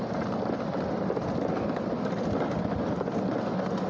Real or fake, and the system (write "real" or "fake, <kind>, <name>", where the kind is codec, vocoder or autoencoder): real